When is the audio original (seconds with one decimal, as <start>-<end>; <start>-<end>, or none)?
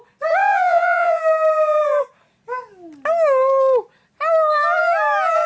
0.0-0.4; 1.2-5.5